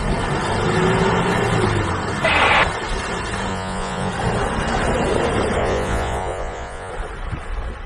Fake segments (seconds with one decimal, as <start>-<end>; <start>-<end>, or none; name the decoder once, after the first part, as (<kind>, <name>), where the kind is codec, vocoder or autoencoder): 3.5-4.1 (vocoder, Vocos); 5.6-6.9